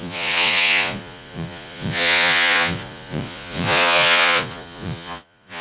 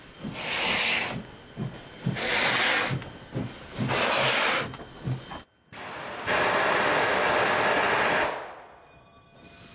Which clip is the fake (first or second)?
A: first